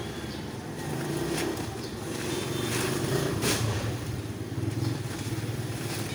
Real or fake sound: fake